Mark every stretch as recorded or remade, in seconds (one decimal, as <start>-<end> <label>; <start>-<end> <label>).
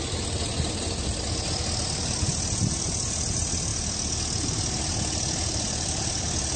0.0-6.6 recorded